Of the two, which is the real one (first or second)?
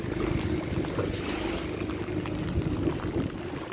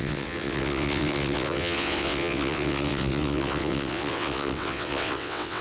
first